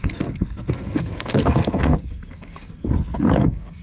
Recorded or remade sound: remade